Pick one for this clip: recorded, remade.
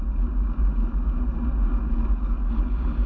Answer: recorded